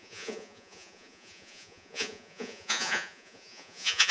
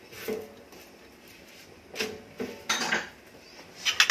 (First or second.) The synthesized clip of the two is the first